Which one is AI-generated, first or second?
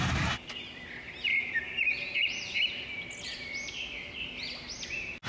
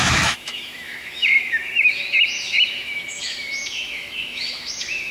second